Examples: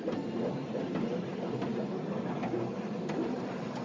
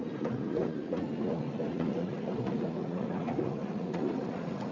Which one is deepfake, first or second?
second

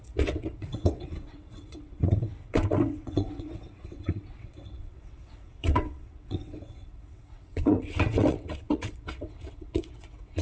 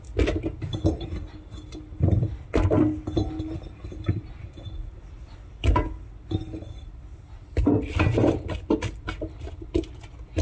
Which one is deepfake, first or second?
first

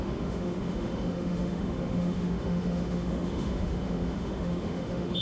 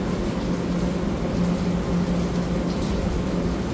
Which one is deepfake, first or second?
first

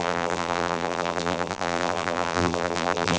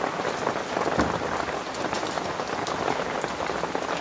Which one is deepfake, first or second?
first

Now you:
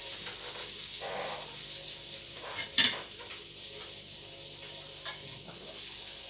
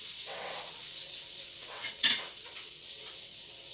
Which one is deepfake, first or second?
second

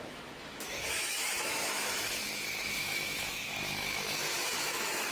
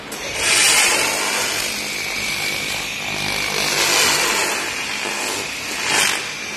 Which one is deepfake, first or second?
first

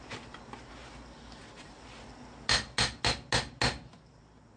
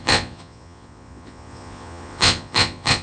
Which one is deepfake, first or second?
second